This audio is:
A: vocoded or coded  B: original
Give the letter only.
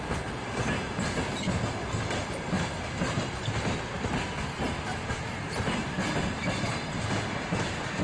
B